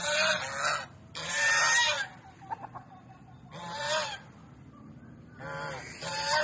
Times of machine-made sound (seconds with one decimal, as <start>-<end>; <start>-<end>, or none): none